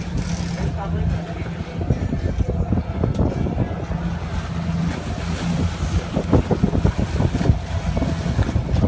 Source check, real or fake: real